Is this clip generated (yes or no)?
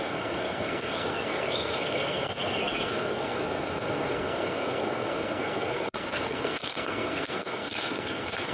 yes